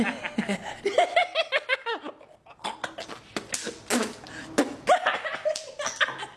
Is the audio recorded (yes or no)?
yes